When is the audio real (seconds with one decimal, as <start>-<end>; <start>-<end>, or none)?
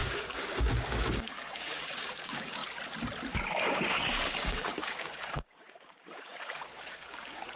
2.6-3.5